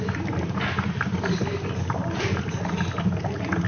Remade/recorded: recorded